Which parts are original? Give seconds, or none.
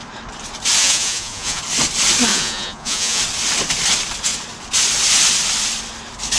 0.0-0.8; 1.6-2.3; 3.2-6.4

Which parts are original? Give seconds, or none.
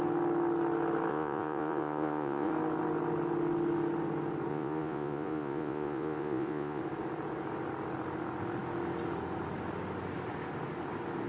0.0-1.1; 2.5-4.5; 6.8-11.3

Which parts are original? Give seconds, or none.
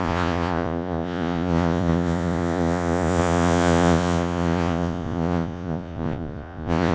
none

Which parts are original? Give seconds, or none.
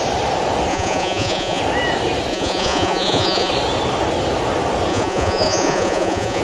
0.0-0.7; 1.6-2.3; 3.5-4.9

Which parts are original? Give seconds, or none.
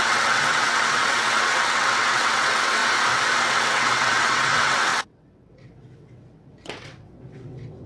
2.8-3.5